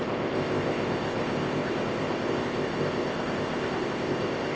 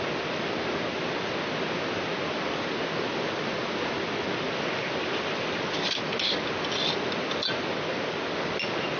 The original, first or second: second